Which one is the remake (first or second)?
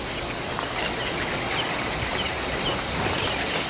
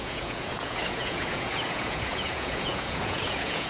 second